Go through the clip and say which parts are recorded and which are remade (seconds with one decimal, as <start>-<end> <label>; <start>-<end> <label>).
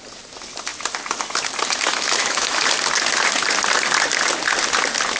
0.0-1.9 recorded; 1.9-2.6 remade; 2.6-5.2 recorded